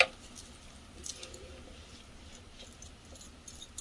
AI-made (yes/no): no